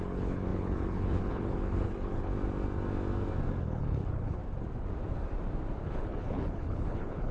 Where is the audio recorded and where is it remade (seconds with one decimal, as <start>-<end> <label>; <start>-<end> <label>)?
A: 0.0-2.3 remade; 2.3-3.6 recorded; 3.6-4.4 remade; 4.4-5.8 recorded; 5.8-7.3 remade